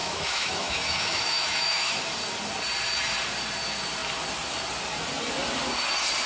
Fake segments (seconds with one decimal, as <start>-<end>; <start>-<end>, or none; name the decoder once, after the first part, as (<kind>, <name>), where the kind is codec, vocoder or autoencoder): 0.0-2.0 (autoencoder, DAC-VAE)